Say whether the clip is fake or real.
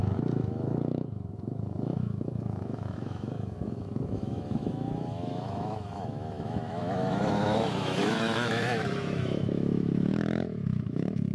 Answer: fake